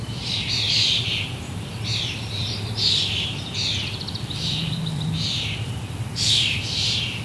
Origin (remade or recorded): remade